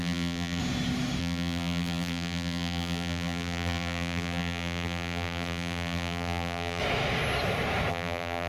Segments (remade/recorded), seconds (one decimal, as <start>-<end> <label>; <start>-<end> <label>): 0.0-0.6 remade; 0.6-1.2 recorded; 1.2-6.8 remade; 6.8-7.9 recorded; 7.9-8.5 remade